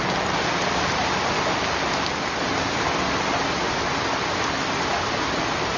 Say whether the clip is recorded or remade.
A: recorded